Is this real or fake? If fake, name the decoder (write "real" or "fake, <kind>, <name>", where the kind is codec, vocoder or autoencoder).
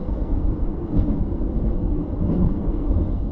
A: fake, codec, SNAC